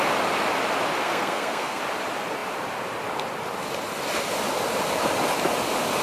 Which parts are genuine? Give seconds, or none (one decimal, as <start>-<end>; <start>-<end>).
0.0-1.0; 1.8-6.0